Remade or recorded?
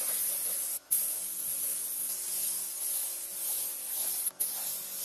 recorded